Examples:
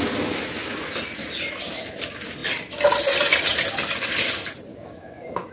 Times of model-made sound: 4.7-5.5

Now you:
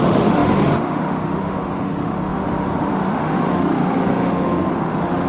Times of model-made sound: 0.0-5.3

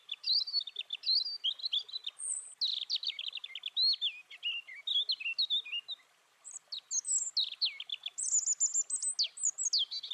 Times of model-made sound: none

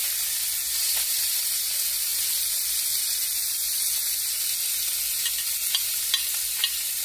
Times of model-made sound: none

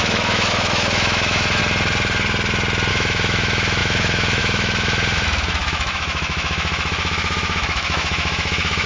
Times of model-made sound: 0.0-1.6; 2.9-8.9

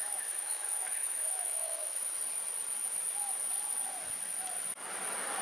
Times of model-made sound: 0.0-2.0